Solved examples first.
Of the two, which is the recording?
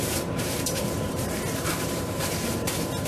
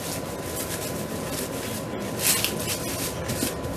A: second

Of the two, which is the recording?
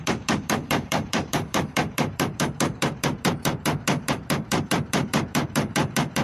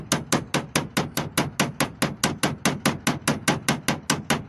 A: second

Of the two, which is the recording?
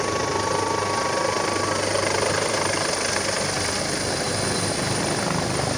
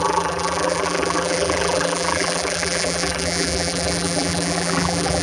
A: first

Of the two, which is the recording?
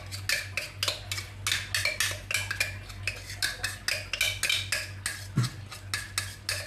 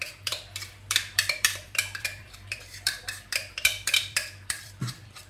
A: first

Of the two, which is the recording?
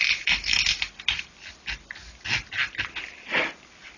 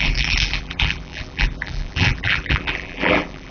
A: first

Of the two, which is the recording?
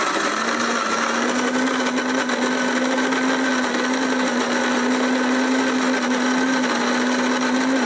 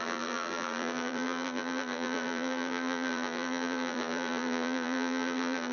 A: first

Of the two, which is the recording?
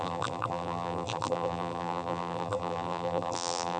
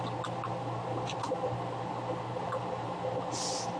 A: second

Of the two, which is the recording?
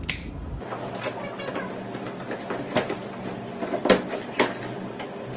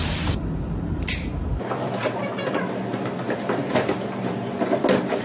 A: first